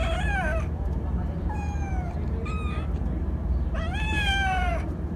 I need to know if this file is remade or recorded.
remade